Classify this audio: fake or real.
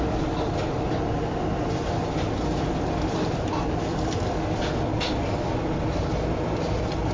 fake